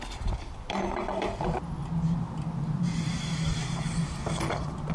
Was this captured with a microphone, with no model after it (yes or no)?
yes